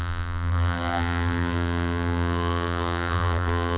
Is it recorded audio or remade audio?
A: remade